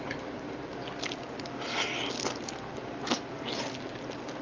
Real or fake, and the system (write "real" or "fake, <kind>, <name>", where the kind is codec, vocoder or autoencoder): real